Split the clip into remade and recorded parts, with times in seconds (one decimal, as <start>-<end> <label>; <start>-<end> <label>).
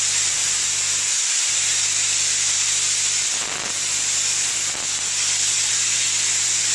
0.0-6.7 recorded